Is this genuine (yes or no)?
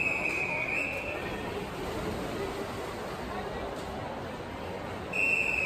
yes